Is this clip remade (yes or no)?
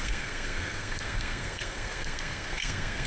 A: yes